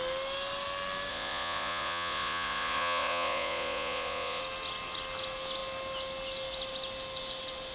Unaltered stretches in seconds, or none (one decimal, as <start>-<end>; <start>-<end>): 0.0-1.1; 4.4-7.7